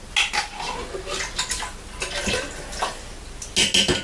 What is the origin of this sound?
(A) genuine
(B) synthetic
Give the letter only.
A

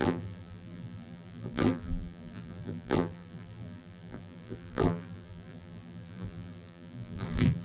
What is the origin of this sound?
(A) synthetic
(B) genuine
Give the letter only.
A